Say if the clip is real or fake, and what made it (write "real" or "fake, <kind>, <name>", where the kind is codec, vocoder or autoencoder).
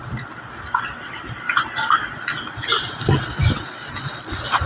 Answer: real